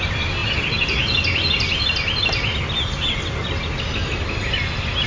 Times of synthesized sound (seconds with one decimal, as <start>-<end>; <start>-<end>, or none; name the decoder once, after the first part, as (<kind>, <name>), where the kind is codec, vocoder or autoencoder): none